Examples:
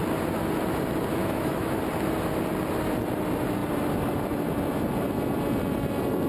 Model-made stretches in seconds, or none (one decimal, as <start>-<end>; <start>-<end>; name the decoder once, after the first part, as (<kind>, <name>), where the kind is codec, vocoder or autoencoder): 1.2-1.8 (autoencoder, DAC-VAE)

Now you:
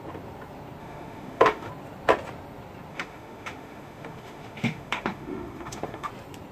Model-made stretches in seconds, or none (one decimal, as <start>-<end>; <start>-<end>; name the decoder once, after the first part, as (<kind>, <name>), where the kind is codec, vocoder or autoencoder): 0.8-1.7 (autoencoder, DAC-VAE); 2.9-6.1

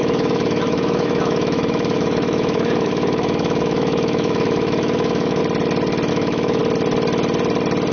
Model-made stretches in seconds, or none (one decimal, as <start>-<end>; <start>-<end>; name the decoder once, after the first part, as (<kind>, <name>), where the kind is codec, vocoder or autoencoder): 0.0-5.4 (autoencoder, DAC-VAE); 6.1-6.6

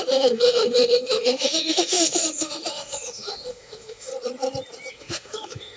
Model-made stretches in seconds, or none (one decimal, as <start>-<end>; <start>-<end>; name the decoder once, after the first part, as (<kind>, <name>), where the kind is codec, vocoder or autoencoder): 0.0-4.1 (autoencoder, DAC-VAE); 4.9-5.8

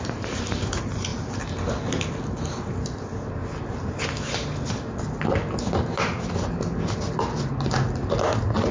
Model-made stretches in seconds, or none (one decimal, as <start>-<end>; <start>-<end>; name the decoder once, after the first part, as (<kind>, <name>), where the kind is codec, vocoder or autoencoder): none

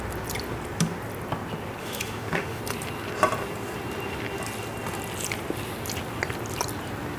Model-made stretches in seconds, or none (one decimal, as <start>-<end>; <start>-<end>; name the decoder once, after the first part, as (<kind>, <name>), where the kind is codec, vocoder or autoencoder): 1.8-2.6 (autoencoder, DAC-VAE)

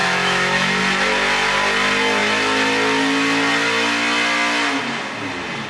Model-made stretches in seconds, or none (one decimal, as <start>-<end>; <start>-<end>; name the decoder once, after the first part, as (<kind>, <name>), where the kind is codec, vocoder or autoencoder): 0.0-0.8 (autoencoder, DAC-VAE)